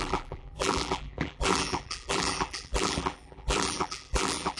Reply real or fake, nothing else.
fake